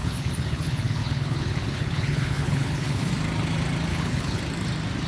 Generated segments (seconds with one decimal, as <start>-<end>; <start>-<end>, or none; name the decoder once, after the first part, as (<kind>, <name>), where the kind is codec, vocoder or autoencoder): 0.0-3.1 (codec, HILCodec); 3.9-4.4